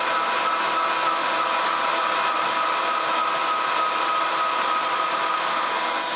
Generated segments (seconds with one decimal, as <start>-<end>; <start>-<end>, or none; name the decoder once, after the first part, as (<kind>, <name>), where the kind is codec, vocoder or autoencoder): none